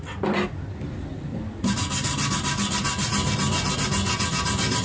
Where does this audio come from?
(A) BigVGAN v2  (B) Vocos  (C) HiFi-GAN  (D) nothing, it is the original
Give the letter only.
D